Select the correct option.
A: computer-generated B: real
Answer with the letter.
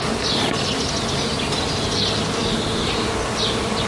B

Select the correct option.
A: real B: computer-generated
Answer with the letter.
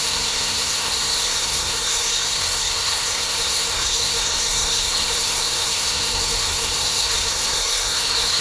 B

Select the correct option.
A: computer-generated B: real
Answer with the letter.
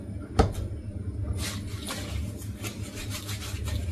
B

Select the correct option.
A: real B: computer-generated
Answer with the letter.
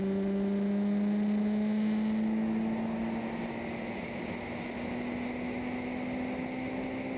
A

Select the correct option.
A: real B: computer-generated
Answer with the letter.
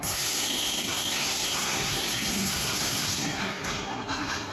B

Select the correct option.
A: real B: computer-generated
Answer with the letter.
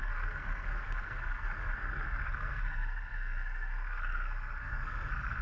B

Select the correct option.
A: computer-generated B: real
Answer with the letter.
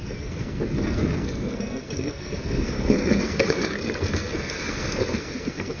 A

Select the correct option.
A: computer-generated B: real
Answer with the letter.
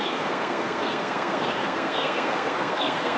A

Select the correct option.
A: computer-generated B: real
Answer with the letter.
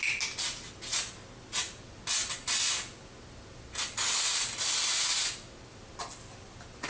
B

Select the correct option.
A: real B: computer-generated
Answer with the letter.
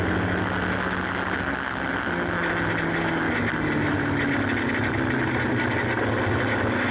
A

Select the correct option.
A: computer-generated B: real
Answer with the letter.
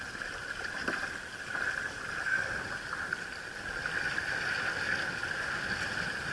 B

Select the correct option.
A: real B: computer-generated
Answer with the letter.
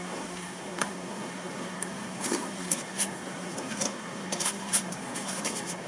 B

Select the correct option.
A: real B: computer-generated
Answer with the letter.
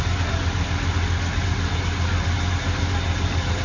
A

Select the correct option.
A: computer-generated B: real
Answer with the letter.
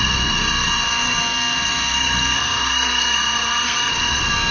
A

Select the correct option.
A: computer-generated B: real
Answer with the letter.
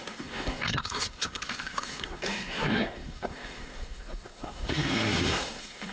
A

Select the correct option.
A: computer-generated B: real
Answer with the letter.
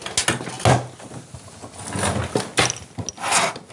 B